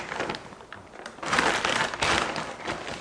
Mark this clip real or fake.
real